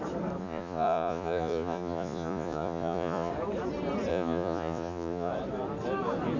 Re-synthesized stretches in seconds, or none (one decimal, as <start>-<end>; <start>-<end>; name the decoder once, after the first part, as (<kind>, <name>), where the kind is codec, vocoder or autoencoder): 0.4-3.3 (vocoder, Vocos); 4.1-5.3